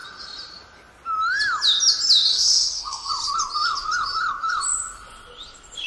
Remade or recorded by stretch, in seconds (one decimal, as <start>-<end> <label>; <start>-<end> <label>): 0.0-2.3 recorded; 2.3-3.1 remade; 3.1-5.9 recorded